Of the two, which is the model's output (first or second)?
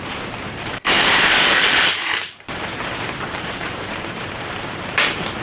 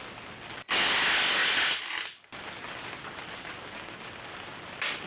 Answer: first